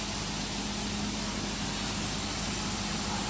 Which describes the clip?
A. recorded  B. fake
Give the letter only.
A